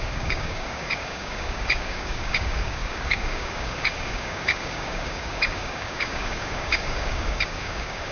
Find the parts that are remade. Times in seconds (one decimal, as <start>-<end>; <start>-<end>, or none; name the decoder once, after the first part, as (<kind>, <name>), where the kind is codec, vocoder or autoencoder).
0.0-8.1 (codec, DAC)